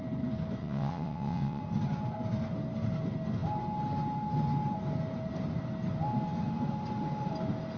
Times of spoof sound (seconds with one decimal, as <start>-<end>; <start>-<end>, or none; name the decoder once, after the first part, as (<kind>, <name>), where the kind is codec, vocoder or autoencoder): 0.6-1.6 (vocoder, WaveNeXt)